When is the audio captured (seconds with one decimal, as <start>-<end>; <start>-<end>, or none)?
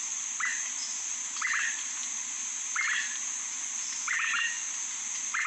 0.0-5.5